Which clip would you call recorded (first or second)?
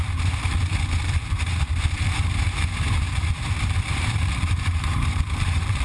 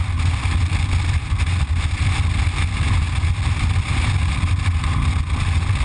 second